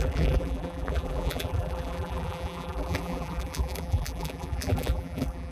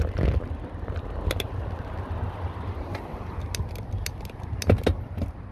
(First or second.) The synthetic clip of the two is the first